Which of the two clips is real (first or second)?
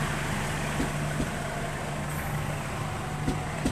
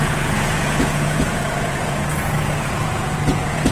first